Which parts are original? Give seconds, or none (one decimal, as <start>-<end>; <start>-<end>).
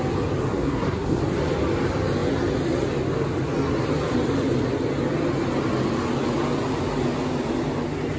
0.0-0.5; 1.2-8.2